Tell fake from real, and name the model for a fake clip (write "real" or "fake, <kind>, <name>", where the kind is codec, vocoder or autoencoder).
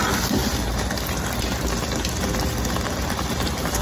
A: real